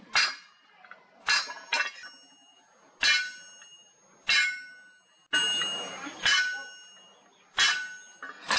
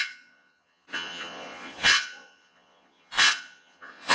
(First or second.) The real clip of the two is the first